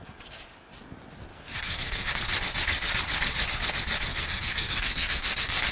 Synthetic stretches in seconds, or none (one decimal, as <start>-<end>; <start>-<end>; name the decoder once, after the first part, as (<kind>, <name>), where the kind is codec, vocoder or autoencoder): 1.3-2.1 (codec, SNAC); 4.1-5.7

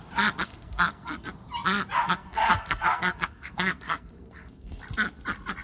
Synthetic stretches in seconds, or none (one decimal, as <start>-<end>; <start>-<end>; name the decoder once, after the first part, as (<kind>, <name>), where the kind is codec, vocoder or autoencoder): 0.4-1.3 (codec, SNAC); 2.0-4.8

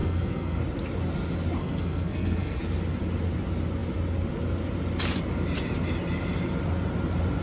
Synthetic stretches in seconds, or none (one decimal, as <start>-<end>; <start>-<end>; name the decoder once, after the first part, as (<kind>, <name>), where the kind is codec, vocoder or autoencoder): 0.0-0.6 (codec, SNAC); 1.6-2.6

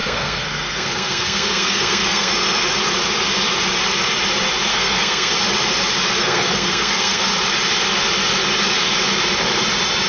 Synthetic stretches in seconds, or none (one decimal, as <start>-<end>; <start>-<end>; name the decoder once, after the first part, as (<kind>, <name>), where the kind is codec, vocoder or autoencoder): 0.0-2.3 (codec, SNAC); 4.7-5.3; 6.2-7.3

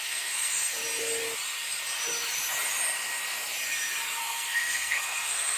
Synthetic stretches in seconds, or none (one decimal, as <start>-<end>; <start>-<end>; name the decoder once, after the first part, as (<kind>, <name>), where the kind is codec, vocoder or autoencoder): 0.0-0.8 (codec, SNAC); 4.2-5.6